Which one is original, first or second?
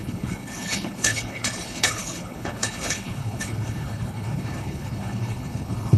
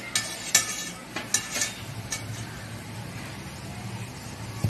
second